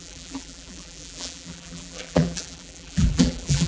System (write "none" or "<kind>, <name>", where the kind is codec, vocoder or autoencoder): vocoder, BigVGAN v2